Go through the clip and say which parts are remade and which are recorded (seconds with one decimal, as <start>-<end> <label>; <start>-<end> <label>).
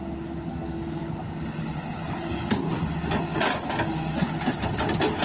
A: 0.0-0.5 recorded; 0.5-1.0 remade; 1.0-5.2 recorded